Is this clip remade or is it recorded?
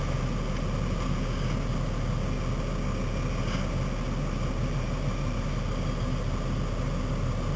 recorded